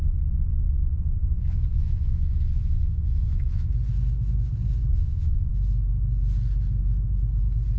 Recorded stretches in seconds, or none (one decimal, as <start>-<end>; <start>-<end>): 3.7-4.9; 5.5-7.8